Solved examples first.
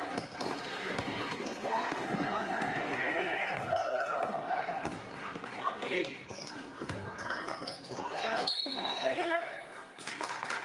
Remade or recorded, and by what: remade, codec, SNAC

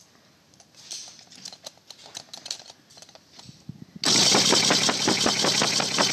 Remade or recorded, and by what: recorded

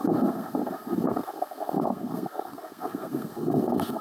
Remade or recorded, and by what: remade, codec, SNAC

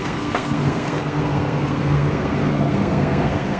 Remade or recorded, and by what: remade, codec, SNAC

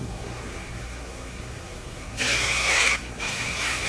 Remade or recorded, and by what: remade, codec, SNAC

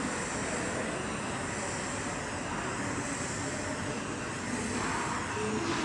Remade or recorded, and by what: recorded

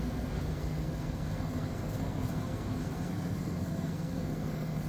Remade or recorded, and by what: remade, codec, SNAC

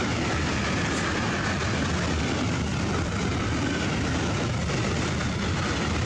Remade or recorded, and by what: recorded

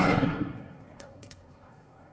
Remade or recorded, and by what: remade, codec, SNAC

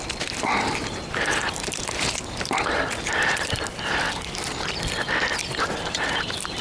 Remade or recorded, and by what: recorded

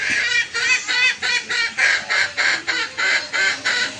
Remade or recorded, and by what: recorded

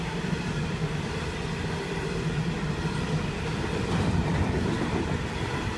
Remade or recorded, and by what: recorded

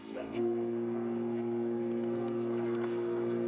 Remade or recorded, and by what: remade, codec, SNAC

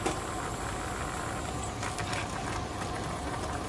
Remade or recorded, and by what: recorded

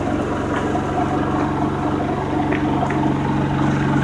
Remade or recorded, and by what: recorded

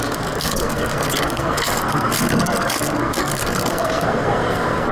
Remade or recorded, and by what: remade, codec, SNAC